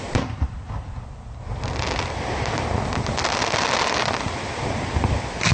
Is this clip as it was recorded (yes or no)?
no